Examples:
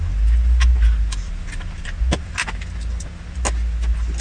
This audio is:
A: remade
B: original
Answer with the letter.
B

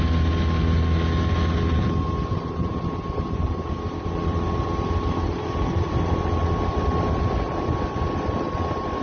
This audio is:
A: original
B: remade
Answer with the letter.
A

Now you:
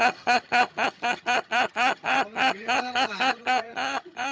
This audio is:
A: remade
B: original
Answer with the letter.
A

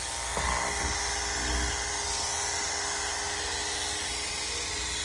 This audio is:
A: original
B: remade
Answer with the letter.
A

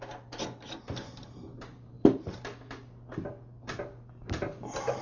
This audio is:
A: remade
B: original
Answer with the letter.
B